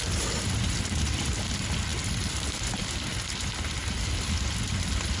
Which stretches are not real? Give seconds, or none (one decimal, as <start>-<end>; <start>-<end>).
none